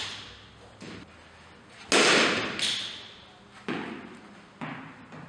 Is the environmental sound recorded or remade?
recorded